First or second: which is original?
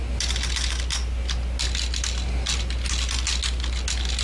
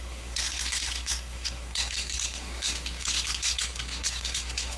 first